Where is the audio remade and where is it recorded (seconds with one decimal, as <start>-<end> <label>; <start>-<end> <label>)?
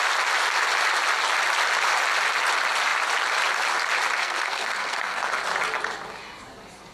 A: 0.0-4.2 recorded; 4.2-5.3 remade; 5.3-6.9 recorded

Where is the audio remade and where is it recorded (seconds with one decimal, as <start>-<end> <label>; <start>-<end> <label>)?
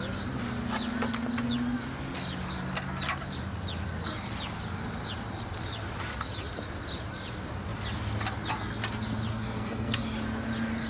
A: 0.0-9.3 recorded; 9.3-10.0 remade; 10.0-10.9 recorded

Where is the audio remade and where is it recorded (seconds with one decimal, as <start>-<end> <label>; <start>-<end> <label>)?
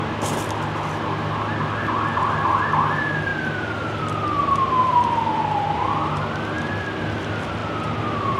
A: 0.0-8.4 recorded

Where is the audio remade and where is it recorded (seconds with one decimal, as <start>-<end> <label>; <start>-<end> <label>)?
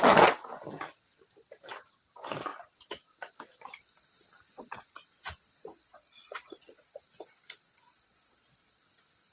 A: 0.0-5.7 recorded; 5.7-7.0 remade; 7.0-7.9 recorded; 7.9-8.8 remade; 8.8-9.3 recorded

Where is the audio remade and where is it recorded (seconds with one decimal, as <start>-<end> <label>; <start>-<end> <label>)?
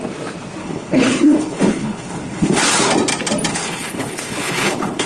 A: 0.0-0.6 recorded; 0.6-2.6 remade; 2.6-3.5 recorded; 3.5-5.1 remade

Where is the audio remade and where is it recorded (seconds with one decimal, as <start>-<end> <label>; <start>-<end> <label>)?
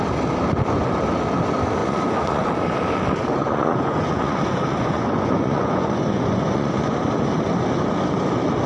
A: 0.0-1.8 recorded; 1.8-2.5 remade; 2.5-3.3 recorded; 3.3-7.1 remade; 7.1-8.7 recorded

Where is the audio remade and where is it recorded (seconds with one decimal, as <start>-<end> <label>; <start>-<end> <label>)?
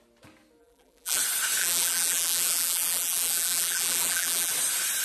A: 0.0-0.6 recorded; 0.6-1.2 remade; 1.2-1.6 recorded; 1.6-4.5 remade; 4.5-5.0 recorded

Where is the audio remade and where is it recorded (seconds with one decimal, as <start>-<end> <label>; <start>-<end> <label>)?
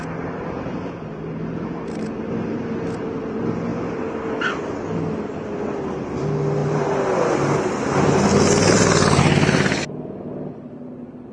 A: 0.0-11.3 recorded